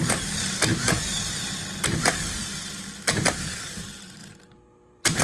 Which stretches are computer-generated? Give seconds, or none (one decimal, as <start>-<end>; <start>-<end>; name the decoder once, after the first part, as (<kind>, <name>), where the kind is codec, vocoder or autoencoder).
0.7-1.4 (vocoder, BigVGAN v2); 4.2-5.2